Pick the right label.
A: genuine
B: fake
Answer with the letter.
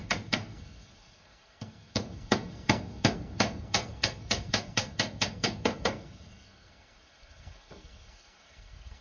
B